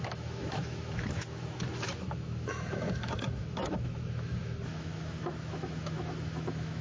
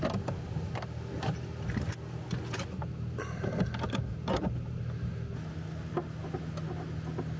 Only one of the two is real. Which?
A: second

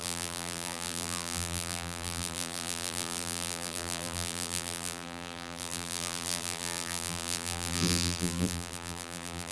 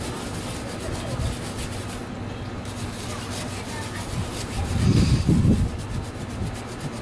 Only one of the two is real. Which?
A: second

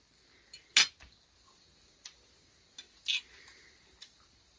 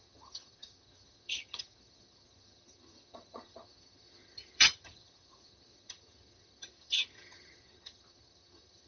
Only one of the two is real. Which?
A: first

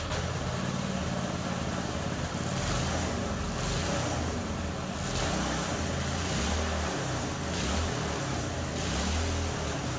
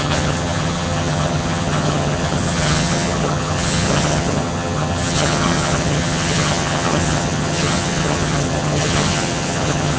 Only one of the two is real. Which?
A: first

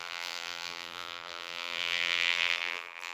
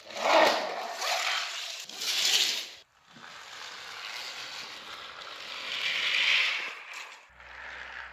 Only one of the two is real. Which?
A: second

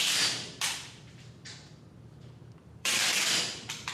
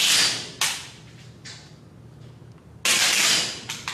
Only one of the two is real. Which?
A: second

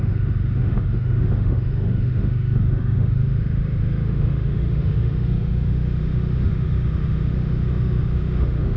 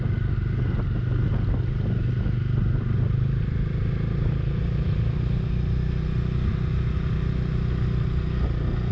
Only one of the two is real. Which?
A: second